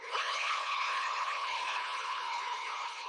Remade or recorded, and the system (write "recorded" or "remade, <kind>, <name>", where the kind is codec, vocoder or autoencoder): remade, codec, HILCodec